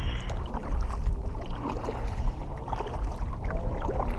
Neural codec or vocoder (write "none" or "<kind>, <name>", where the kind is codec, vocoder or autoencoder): none